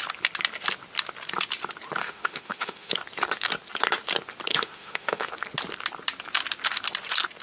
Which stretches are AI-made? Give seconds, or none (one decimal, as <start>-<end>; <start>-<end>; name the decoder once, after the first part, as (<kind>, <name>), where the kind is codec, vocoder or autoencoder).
2.0-2.9 (autoencoder, DAC-VAE); 4.5-5.3